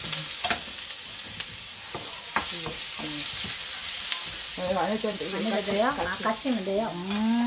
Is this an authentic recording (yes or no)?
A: yes